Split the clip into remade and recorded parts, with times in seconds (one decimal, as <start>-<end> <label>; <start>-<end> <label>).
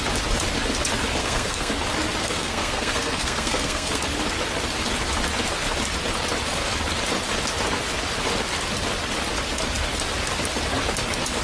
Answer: 0.0-1.2 recorded; 1.2-1.7 remade; 1.7-2.2 recorded; 2.2-4.0 remade; 4.0-11.4 recorded